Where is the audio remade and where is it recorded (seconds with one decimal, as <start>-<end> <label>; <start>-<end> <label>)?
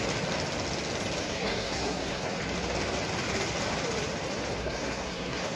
0.0-1.2 recorded; 1.2-2.4 remade; 2.4-4.6 recorded; 4.6-5.6 remade